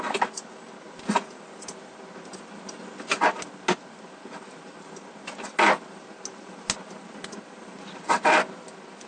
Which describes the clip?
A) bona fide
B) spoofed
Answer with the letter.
A